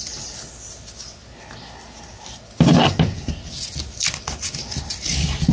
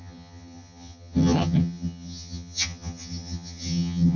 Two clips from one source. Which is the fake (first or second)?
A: second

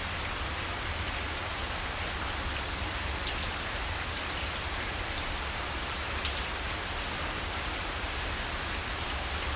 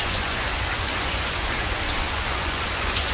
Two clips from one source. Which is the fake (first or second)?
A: second